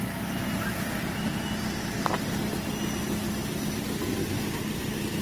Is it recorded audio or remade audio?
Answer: recorded